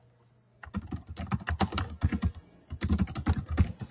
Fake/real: real